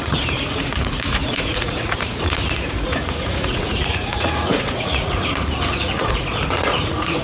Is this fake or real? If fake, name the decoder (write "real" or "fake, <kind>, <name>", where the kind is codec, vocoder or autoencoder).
fake, vocoder, Vocos